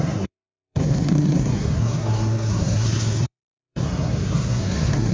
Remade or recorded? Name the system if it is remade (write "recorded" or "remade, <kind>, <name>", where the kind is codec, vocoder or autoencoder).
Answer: remade, codec, SNAC